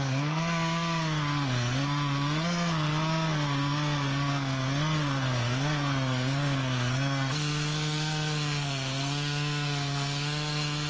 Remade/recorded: remade